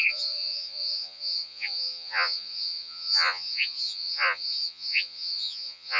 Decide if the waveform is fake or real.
fake